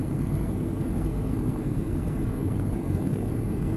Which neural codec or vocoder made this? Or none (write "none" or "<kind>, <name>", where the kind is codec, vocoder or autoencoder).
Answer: codec, SNAC